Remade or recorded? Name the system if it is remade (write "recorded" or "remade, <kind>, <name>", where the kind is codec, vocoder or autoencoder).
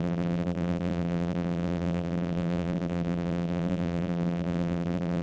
remade, vocoder, BigVGAN v2